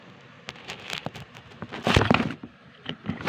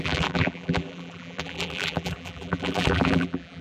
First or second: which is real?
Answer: first